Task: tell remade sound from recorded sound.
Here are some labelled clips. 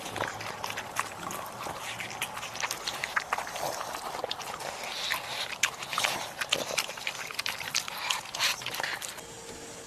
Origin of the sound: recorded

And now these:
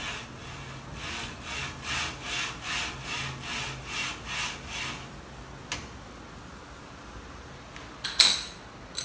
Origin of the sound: recorded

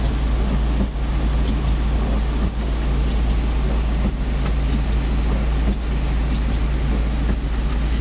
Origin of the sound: recorded